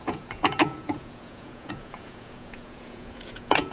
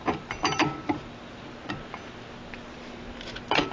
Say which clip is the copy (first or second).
first